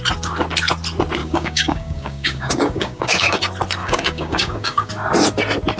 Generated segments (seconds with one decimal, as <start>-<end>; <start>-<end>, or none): 1.2-3.4; 3.8-4.9